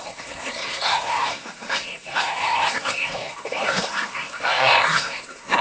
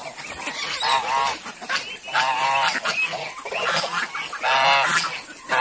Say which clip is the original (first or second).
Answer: second